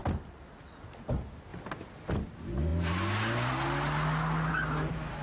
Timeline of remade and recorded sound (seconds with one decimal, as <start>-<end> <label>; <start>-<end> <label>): 0.0-5.2 recorded